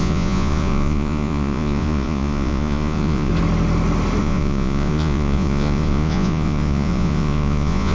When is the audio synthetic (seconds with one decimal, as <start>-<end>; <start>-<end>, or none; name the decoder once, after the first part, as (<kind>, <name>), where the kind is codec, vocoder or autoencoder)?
0.0-3.3 (vocoder, Vocos); 4.2-7.9